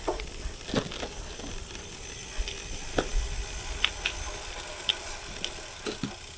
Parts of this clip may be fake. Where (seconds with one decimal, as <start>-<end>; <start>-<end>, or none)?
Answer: none